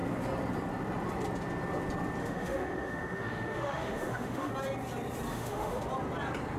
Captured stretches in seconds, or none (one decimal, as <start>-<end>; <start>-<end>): 0.0-2.2; 4.5-5.3; 5.8-6.6